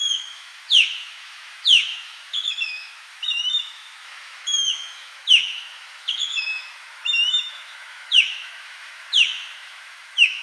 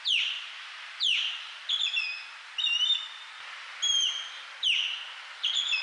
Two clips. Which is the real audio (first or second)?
second